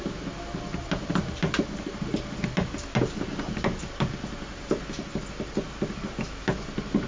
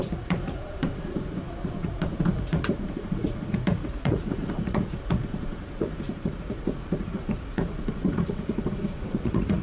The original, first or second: first